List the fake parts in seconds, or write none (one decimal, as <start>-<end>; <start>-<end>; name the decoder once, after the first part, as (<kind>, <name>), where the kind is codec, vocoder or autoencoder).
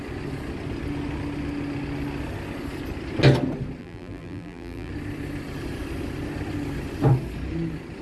3.8-4.9 (vocoder, BigVGAN v2)